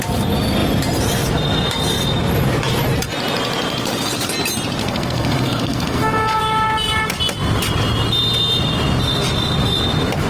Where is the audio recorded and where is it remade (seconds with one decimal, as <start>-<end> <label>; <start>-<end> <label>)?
0.0-4.8 recorded; 4.8-6.4 remade; 6.4-10.3 recorded